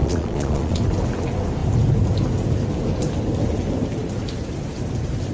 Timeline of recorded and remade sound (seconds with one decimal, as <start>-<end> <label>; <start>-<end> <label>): 0.0-0.8 remade; 0.8-5.3 recorded